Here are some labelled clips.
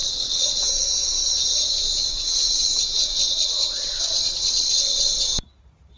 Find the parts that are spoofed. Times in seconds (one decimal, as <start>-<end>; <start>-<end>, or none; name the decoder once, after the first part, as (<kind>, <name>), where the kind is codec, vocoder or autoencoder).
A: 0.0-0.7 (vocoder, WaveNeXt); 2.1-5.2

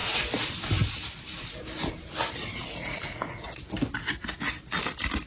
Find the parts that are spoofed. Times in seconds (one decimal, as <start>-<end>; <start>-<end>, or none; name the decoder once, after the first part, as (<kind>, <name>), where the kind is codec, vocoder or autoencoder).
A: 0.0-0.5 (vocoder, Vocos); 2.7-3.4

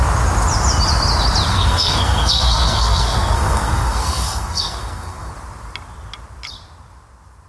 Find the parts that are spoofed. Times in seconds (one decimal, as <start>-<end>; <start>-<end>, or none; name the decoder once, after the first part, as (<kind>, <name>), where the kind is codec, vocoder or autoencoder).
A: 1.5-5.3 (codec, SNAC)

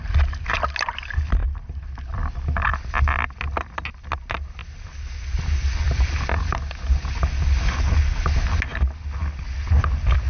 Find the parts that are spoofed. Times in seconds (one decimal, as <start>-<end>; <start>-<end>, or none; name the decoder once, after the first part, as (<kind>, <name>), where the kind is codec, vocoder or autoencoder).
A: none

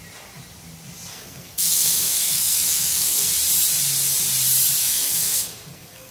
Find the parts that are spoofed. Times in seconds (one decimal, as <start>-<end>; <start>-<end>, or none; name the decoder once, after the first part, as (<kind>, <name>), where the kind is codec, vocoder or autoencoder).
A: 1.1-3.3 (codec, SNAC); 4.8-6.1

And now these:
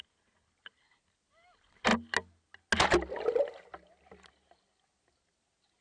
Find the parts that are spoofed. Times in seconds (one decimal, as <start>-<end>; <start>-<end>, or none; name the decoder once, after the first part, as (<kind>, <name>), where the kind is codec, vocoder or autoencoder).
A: none

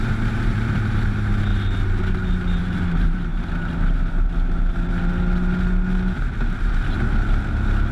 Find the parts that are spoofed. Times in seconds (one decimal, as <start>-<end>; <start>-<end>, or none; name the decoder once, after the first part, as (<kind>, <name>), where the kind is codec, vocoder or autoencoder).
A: 0.0-1.5 (vocoder, BigVGAN v2); 2.6-3.3

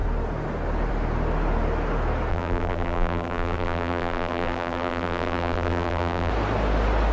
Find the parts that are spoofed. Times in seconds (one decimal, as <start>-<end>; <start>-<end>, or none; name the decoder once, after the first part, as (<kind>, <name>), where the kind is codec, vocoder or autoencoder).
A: 2.3-6.3 (vocoder, BigVGAN v2)